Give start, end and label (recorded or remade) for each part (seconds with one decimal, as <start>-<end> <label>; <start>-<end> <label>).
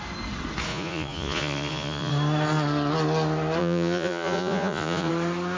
0.0-0.7 recorded; 0.7-2.1 remade; 2.1-3.6 recorded; 3.6-5.1 remade; 5.1-5.6 recorded